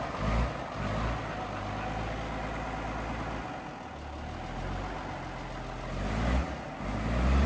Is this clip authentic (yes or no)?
yes